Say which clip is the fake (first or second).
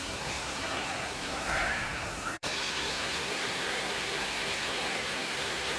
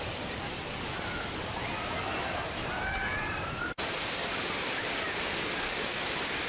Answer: first